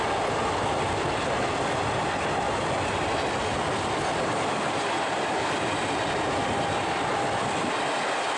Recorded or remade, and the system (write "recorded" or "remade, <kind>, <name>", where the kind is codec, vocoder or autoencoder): recorded